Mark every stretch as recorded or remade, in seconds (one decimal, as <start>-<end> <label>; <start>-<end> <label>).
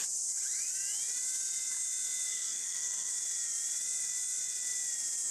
0.0-2.3 recorded; 2.3-3.1 remade; 3.1-5.3 recorded